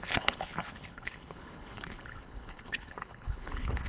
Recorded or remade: remade